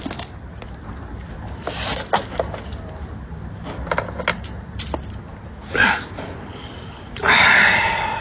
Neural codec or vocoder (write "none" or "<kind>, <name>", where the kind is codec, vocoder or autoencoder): none